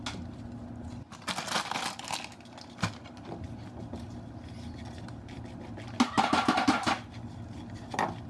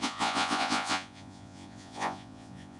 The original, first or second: first